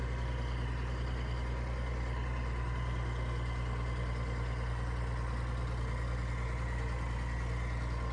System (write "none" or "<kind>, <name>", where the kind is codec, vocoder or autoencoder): none